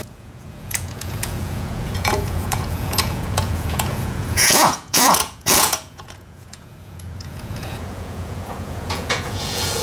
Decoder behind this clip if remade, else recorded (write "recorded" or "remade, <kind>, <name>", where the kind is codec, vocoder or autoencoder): remade, vocoder, Vocos